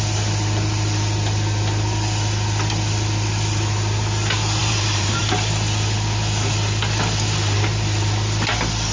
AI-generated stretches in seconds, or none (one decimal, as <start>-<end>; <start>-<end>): 4.6-5.2